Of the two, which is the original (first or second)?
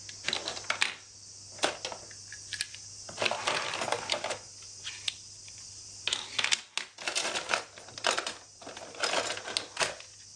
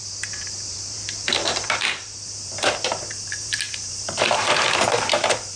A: first